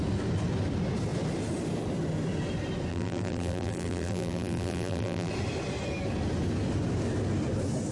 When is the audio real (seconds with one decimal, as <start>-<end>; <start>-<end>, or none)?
0.0-2.9; 5.3-7.9